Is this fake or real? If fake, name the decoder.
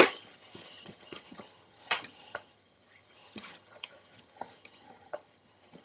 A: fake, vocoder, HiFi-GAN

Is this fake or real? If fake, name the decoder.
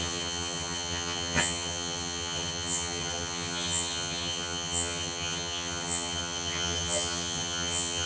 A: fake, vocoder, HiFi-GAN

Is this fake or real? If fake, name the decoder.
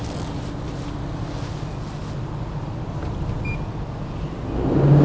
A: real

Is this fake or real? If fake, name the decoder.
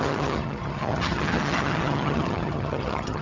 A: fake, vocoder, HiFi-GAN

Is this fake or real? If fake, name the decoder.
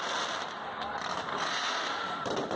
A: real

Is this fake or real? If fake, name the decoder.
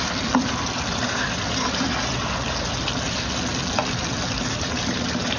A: real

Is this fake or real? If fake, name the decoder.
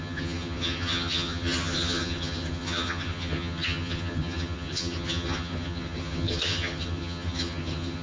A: fake, vocoder, HiFi-GAN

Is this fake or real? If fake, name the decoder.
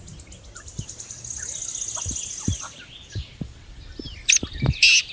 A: real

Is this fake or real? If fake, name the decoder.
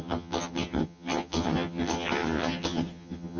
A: fake, vocoder, HiFi-GAN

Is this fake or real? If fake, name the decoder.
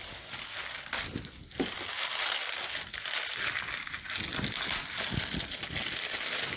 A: real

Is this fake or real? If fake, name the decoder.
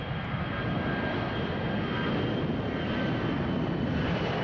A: real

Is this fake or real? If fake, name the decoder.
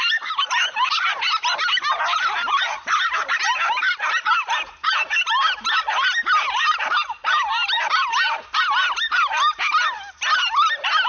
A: real